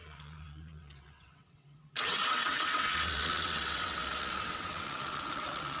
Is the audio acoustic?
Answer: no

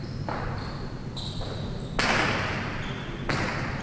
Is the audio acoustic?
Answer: yes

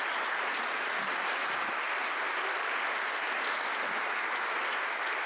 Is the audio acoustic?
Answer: yes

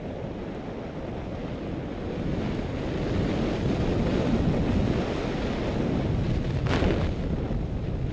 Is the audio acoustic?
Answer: yes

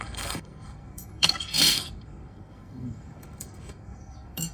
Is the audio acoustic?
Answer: no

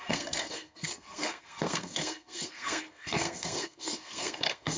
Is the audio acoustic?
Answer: no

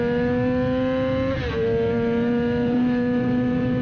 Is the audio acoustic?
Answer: yes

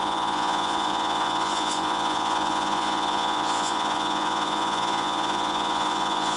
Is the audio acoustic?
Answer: no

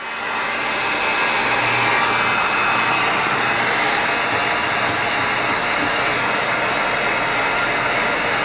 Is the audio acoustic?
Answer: yes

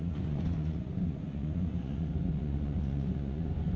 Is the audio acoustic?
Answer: no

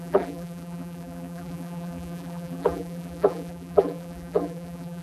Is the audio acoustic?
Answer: no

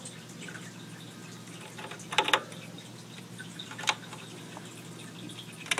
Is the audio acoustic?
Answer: yes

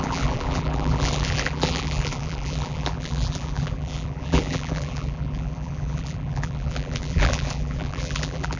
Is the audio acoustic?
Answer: no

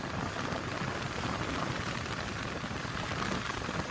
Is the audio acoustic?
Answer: yes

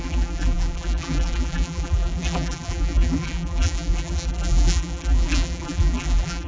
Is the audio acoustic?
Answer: no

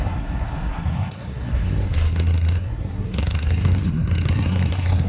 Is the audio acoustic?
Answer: no